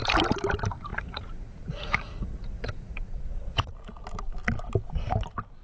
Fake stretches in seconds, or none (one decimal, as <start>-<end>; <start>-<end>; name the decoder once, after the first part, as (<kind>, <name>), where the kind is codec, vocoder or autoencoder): 0.9-3.7 (vocoder, Vocos)